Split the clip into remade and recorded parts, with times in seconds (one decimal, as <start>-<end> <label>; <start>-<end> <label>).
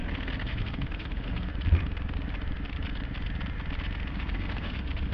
0.0-1.5 remade; 1.5-4.1 recorded; 4.1-5.1 remade